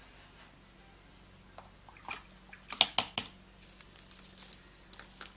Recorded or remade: recorded